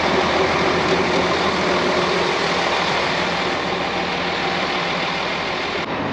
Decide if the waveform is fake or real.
real